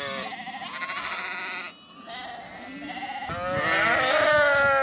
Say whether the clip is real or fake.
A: real